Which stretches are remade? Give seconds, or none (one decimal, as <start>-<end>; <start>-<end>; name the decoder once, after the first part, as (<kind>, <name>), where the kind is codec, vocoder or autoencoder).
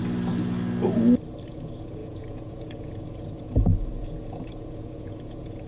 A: 1.5-5.7 (vocoder, Vocos)